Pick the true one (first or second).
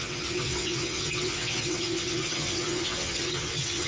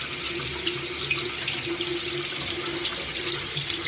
second